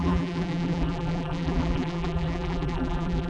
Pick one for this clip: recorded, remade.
remade